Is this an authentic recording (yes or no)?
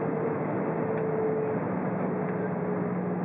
yes